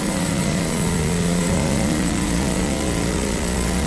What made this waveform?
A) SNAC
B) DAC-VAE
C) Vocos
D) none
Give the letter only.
C